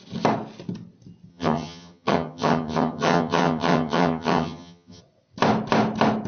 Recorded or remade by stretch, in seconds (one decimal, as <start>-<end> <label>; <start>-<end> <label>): 0.0-1.3 recorded; 1.3-5.0 remade; 5.0-6.3 recorded